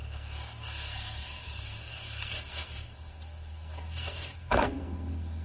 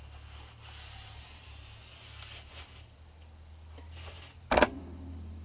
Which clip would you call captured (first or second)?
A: second